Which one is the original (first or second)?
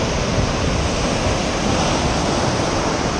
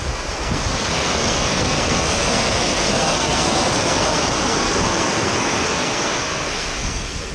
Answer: first